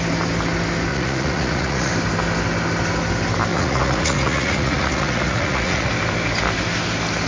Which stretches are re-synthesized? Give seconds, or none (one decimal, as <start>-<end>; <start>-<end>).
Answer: 0.9-1.9; 3.5-5.9